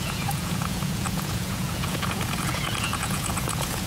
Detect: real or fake fake